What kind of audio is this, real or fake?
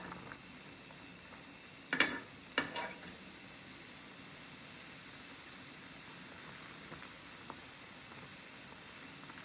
real